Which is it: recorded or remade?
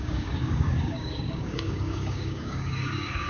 remade